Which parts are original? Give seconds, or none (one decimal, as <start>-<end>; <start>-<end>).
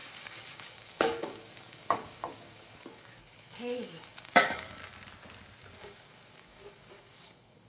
4.8-5.7